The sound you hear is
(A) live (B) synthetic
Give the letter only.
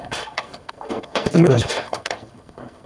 B